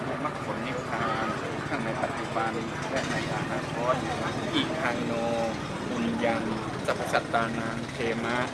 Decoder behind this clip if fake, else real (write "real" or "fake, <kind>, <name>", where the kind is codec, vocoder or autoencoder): real